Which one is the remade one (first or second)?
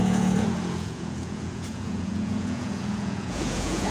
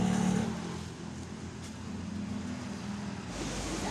first